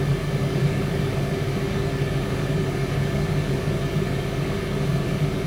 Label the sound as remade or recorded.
remade